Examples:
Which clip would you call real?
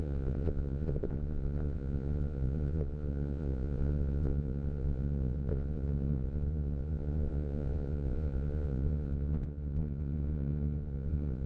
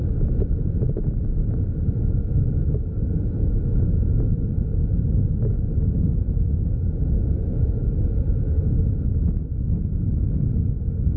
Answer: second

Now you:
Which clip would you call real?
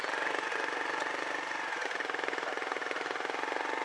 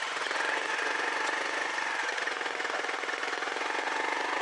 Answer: first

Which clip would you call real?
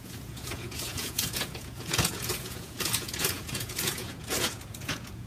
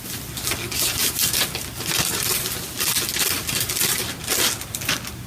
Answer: second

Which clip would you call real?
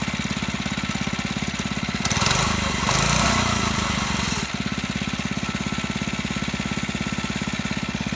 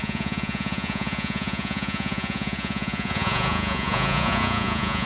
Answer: first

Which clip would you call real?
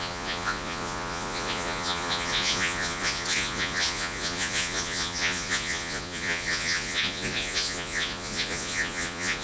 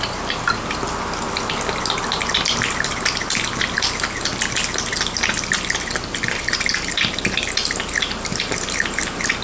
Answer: second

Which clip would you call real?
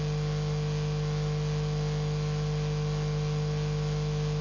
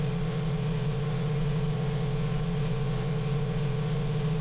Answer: first